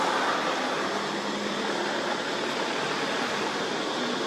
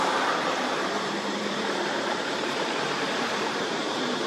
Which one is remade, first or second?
second